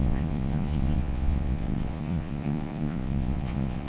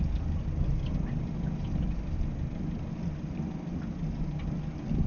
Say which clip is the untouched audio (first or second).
second